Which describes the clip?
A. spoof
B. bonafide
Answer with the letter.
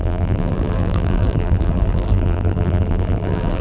A